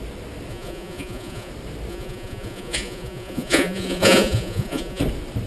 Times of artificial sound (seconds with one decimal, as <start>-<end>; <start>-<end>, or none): 0.5-1.5; 1.9-5.0